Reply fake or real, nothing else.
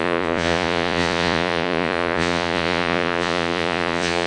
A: fake